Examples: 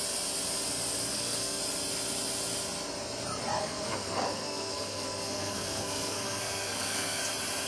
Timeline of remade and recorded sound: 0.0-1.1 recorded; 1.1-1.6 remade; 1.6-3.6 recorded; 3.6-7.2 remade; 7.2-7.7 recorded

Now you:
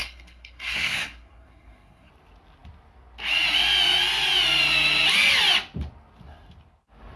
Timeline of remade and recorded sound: 0.0-2.1 remade; 2.1-7.2 recorded

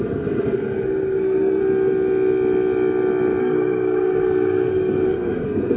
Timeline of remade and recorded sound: 0.0-1.6 remade; 1.6-3.4 recorded; 3.4-5.8 remade